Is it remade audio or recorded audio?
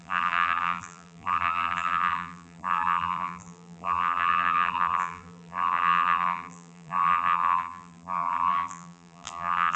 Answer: remade